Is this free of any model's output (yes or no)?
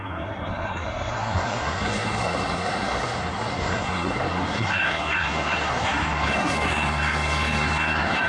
no